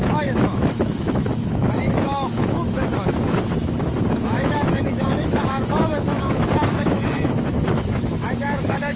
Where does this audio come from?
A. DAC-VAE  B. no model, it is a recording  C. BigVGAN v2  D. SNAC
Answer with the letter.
A